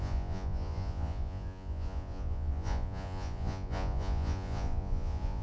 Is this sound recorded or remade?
remade